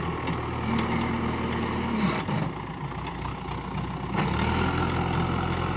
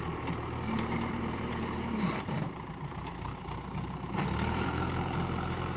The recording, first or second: first